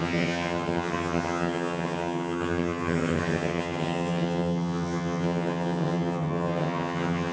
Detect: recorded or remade remade